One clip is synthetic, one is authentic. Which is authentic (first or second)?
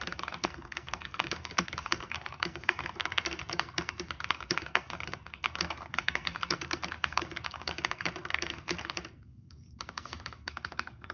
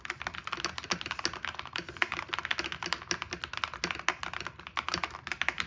second